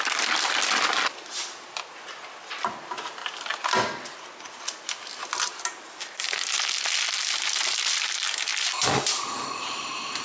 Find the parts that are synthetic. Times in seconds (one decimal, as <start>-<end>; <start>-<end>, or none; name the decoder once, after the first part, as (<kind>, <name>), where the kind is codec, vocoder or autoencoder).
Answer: none